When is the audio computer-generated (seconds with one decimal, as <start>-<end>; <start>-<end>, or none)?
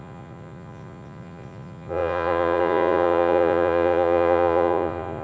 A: 0.0-5.2